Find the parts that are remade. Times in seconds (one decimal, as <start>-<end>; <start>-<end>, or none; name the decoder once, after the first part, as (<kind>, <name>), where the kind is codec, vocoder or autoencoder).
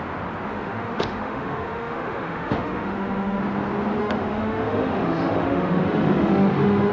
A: 0.5-3.4 (autoencoder, DAC-VAE); 4.0-6.9